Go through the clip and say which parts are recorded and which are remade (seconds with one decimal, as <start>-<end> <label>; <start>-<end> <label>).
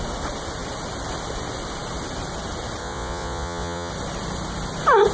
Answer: 0.0-2.8 recorded; 2.8-3.9 remade; 3.9-5.1 recorded